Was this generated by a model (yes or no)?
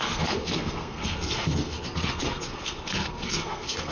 yes